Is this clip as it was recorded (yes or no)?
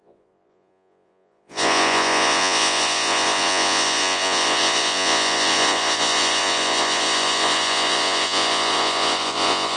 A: no